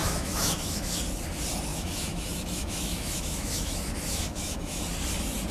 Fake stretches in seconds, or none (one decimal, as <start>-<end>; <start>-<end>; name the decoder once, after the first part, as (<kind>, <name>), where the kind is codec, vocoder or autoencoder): 0.0-1.0 (autoencoder, DAC-VAE); 1.7-4.8